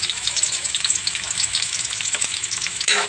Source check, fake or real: fake